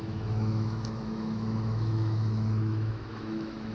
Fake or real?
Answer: fake